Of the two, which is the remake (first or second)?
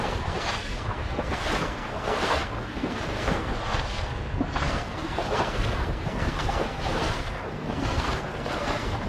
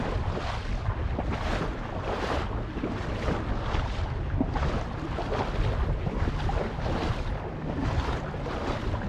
first